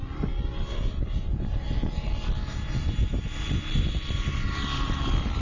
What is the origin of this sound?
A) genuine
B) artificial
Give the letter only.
A